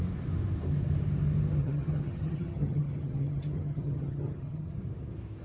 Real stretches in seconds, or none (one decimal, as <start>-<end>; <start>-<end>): 0.0-1.6; 4.8-5.4